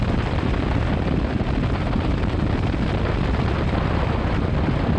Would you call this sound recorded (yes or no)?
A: yes